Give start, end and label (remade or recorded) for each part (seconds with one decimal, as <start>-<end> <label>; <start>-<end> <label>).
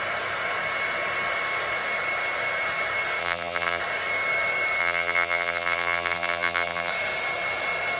0.0-3.2 recorded; 3.2-3.8 remade; 3.8-4.8 recorded; 4.8-6.9 remade; 6.9-8.0 recorded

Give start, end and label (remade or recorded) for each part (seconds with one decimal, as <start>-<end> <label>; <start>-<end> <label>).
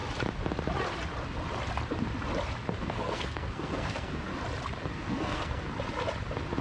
0.0-2.8 recorded; 2.8-4.3 remade; 4.3-4.9 recorded; 4.9-5.6 remade; 5.6-6.6 recorded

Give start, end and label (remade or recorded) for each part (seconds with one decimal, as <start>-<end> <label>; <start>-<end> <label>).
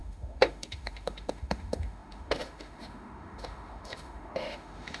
0.0-5.0 remade